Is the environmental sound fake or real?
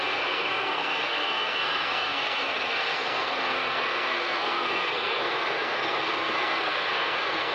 fake